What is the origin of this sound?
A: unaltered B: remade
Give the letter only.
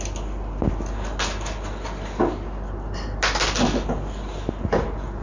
A